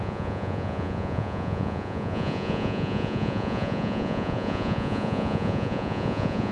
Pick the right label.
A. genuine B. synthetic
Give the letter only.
B